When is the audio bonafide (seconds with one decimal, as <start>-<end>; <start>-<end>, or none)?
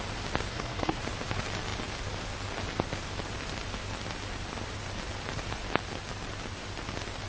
0.0-0.5; 1.0-7.3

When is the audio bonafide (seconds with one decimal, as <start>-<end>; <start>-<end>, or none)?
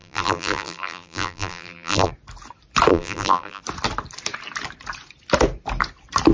2.1-2.9; 3.6-6.3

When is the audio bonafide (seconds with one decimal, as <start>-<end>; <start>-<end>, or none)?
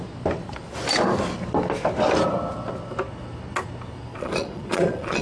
0.0-4.1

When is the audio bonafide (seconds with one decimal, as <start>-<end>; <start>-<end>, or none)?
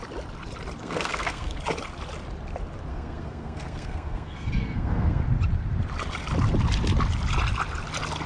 0.0-0.8; 1.6-2.9; 5.2-8.3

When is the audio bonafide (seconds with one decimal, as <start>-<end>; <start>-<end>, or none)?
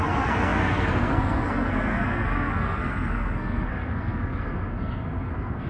none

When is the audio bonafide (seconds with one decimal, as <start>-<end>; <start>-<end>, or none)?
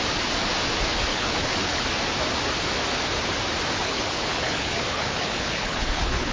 0.0-1.1; 1.8-3.8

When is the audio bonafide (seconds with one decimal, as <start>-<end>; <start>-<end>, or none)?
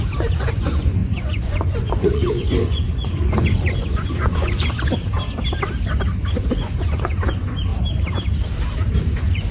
5.0-6.3; 7.7-9.0